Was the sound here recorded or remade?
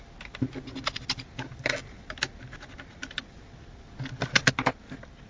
recorded